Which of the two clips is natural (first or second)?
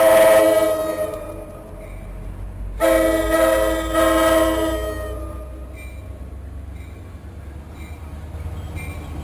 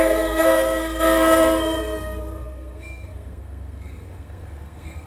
first